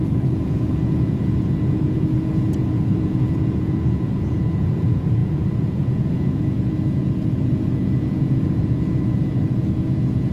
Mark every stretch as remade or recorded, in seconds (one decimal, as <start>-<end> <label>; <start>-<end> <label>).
0.0-10.3 remade